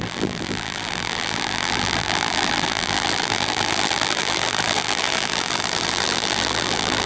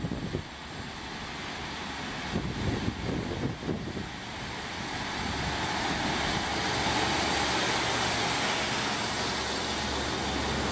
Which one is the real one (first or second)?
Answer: second